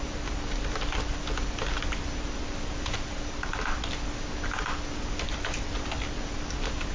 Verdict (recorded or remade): recorded